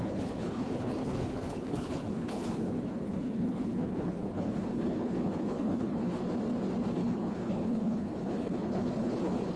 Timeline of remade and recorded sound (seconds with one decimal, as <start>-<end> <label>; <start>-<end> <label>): 0.0-6.2 remade; 6.2-6.9 recorded; 6.9-9.6 remade